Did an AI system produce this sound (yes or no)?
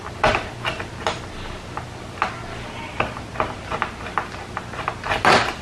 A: no